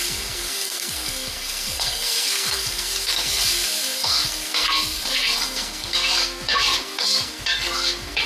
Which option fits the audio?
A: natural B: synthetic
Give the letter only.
B